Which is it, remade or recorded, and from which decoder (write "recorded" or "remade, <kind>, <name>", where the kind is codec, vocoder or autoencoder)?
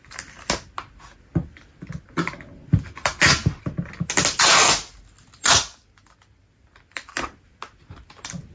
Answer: recorded